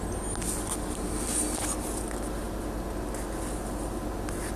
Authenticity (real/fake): real